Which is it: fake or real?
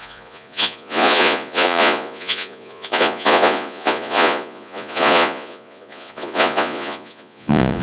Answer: fake